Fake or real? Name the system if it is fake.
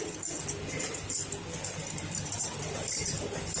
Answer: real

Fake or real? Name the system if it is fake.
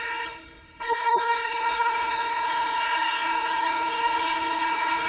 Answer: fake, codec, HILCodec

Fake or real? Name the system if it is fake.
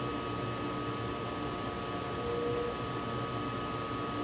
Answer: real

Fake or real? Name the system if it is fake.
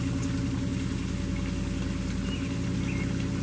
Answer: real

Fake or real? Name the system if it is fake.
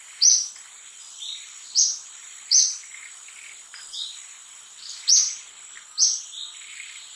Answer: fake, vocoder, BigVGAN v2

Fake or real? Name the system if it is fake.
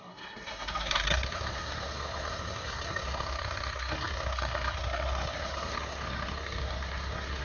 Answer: fake, codec, SNAC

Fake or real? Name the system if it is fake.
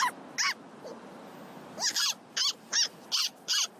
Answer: real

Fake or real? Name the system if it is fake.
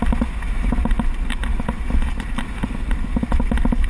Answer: real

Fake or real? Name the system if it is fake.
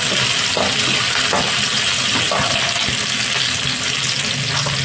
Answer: real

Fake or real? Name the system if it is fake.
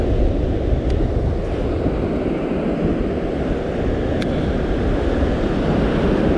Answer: real